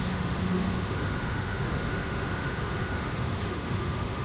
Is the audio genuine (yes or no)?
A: no